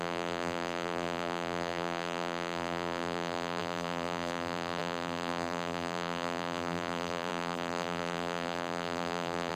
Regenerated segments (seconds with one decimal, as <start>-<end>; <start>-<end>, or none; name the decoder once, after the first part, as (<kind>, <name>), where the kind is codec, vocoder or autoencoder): 0.0-9.5 (vocoder, BigVGAN v2)